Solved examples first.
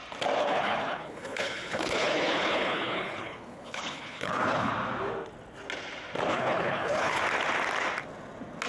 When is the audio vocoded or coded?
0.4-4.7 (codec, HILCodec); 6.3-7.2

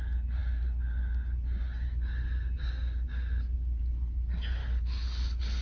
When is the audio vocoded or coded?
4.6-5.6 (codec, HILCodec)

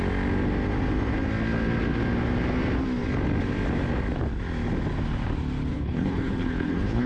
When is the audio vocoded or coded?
5.7-7.1 (codec, HILCodec)